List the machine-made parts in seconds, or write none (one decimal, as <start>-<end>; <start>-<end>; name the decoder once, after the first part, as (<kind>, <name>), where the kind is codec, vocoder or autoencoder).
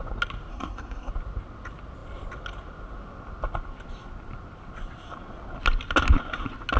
0.5-1.1 (codec, SNAC)